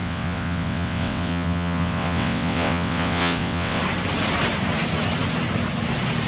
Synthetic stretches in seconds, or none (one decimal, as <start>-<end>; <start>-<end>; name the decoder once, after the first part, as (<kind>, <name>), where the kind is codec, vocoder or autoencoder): 0.0-3.8 (vocoder, WaveNeXt)